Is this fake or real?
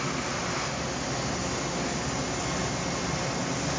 real